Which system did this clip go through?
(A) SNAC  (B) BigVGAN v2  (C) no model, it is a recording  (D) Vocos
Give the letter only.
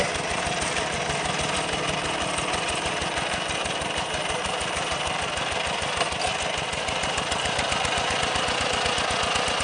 C